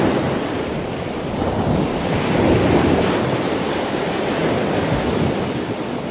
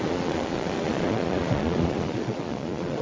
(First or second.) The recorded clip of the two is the first